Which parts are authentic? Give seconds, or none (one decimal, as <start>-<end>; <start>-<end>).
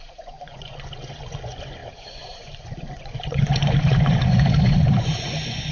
none